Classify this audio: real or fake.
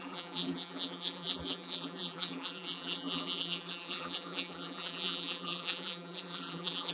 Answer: fake